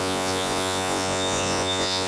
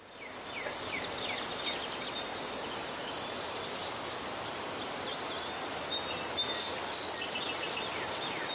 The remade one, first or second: first